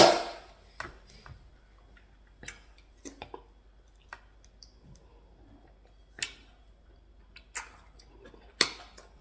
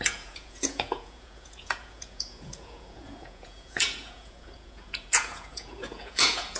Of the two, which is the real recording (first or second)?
first